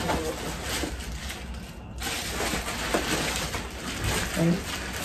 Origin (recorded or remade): recorded